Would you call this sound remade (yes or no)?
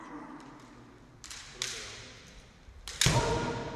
no